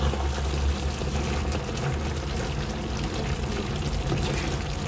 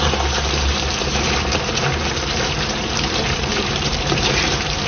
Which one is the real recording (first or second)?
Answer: first